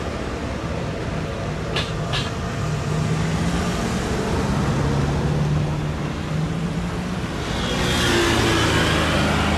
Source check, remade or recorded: recorded